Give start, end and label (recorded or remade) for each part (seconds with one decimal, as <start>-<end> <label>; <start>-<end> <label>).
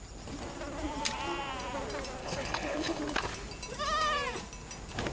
0.0-2.2 recorded; 2.2-3.0 remade; 3.0-5.1 recorded